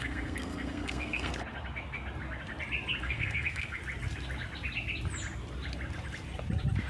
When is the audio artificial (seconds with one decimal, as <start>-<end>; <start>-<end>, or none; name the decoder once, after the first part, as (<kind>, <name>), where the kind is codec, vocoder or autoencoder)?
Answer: 0.0-1.3 (codec, SNAC); 3.0-3.8